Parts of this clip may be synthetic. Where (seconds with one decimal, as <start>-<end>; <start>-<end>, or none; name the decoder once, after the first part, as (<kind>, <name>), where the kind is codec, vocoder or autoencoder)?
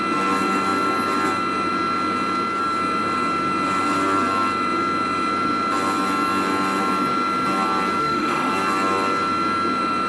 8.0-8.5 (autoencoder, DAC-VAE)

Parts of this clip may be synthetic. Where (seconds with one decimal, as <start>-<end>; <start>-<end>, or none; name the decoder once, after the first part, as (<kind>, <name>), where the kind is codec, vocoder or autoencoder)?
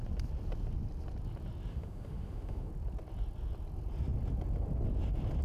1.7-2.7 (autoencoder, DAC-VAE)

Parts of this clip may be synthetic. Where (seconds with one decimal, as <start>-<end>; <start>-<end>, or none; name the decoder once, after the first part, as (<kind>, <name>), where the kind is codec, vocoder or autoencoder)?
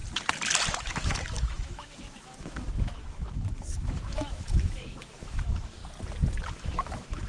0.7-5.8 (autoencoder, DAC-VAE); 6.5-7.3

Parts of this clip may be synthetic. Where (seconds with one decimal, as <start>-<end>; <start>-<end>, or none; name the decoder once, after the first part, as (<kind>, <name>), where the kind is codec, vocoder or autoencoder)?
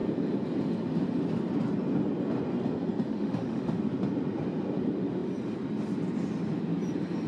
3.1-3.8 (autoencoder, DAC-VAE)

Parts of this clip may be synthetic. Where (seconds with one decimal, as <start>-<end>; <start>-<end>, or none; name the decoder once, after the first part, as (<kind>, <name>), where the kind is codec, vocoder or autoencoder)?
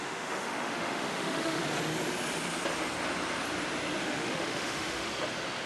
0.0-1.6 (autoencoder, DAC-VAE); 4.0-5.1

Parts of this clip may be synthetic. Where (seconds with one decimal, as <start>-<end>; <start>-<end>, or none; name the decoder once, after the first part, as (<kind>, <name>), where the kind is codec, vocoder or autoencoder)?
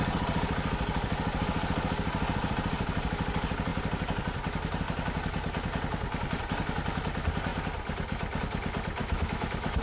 9.0-9.8 (autoencoder, DAC-VAE)